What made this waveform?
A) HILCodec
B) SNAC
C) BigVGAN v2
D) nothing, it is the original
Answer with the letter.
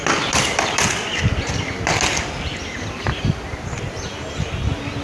D